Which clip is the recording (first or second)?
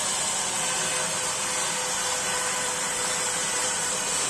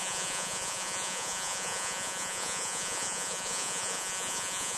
first